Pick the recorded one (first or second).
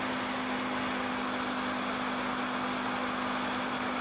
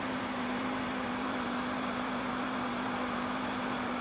first